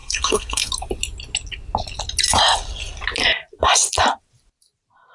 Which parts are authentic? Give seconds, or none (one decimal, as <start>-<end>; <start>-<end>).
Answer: 0.7-5.1